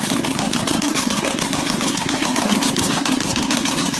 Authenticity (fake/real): fake